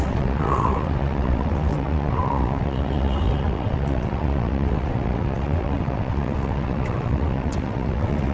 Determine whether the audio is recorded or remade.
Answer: remade